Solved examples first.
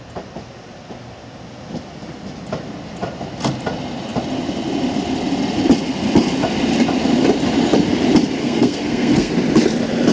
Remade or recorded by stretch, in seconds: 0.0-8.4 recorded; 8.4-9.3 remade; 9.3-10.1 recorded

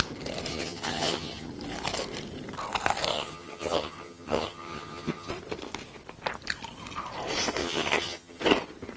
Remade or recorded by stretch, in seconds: 0.0-0.5 recorded; 0.5-1.5 remade; 1.5-3.1 recorded; 3.1-5.3 remade; 5.3-7.6 recorded; 7.6-8.4 remade; 8.4-9.0 recorded

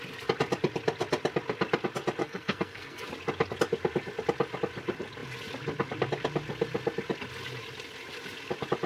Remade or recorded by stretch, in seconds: 0.0-2.2 recorded; 2.2-3.1 remade; 3.1-8.9 recorded